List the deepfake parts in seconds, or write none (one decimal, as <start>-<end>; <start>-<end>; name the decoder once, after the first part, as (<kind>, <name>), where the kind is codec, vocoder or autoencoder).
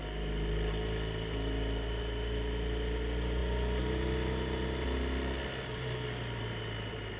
none